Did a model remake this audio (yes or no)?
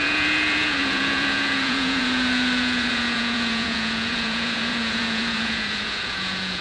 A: yes